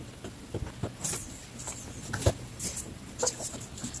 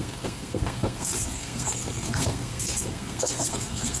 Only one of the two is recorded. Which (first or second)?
first